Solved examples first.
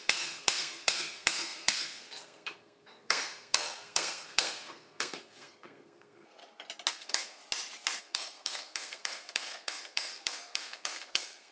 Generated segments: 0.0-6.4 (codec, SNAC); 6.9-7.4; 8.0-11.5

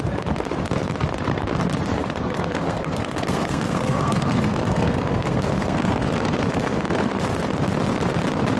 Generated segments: 2.0-7.2 (codec, SNAC)